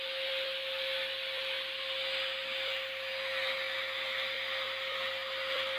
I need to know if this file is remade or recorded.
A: recorded